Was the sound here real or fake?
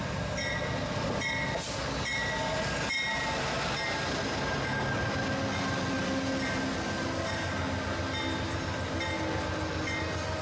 real